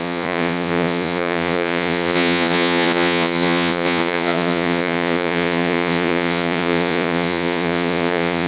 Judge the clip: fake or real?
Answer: fake